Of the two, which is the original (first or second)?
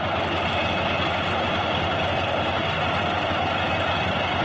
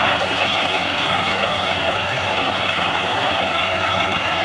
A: first